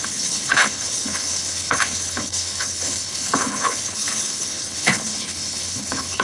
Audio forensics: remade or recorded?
remade